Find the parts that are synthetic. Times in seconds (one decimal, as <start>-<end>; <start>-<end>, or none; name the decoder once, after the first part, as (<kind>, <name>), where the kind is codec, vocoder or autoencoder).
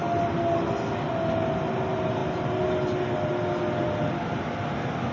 none